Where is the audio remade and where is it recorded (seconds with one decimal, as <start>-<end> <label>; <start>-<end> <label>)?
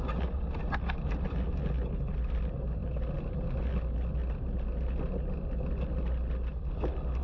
0.0-7.2 recorded